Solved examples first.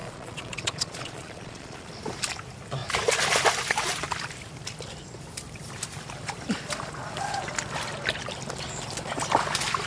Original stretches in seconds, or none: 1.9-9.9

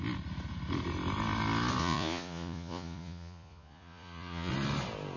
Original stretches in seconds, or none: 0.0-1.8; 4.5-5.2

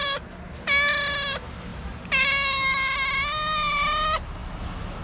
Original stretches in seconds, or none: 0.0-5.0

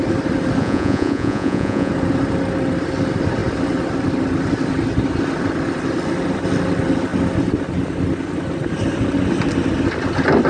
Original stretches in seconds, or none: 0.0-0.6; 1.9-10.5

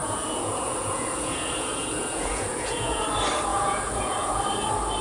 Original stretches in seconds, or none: 3.0-3.5; 4.4-5.0

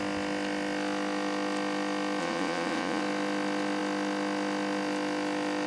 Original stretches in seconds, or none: 0.0-2.2; 3.0-5.7

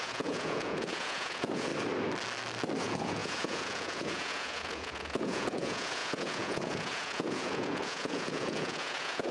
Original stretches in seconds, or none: 1.7-2.8

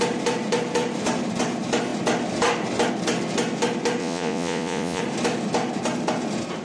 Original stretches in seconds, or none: 0.0-4.0; 5.0-6.6